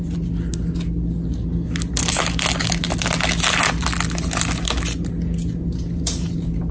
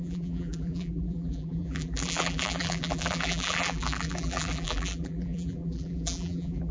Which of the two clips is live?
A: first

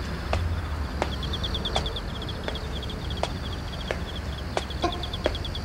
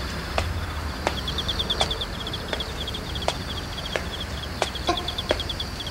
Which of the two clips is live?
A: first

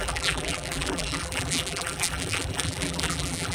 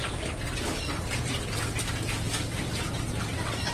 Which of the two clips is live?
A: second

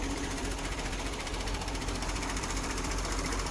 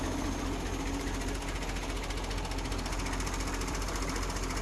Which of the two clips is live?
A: second